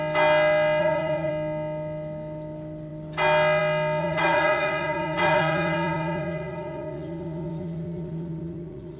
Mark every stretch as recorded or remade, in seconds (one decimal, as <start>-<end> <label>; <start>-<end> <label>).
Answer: 0.0-0.8 recorded; 0.8-1.3 remade; 1.3-4.0 recorded; 4.0-9.0 remade